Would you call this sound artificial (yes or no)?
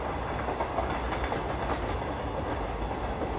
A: no